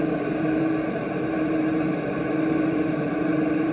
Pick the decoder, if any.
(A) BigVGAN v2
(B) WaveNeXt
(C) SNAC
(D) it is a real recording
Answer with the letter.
A